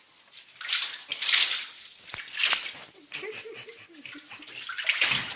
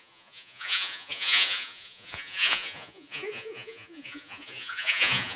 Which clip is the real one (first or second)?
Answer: first